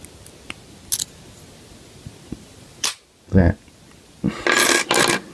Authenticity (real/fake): real